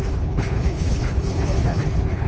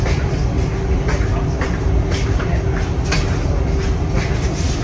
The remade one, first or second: first